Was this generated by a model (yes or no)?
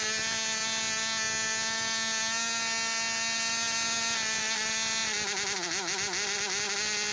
no